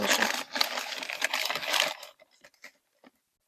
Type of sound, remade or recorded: recorded